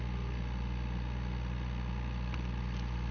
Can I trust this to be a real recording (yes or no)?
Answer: yes